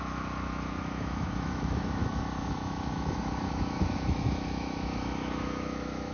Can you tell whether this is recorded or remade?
remade